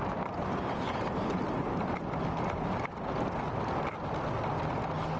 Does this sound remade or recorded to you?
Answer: recorded